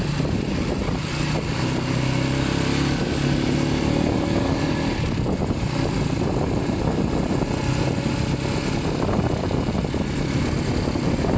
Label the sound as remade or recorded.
recorded